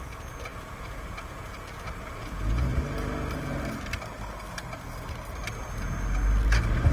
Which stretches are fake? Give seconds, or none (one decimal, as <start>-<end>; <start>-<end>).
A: 0.0-2.7